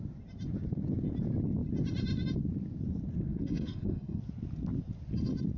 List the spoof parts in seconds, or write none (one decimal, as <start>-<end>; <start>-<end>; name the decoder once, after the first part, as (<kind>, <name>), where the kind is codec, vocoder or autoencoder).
3.3-4.2 (codec, SNAC)